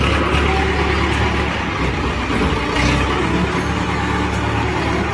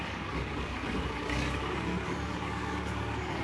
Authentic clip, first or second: first